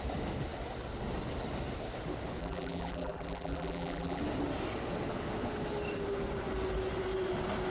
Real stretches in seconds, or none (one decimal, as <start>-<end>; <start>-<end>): 0.0-2.4; 4.2-7.7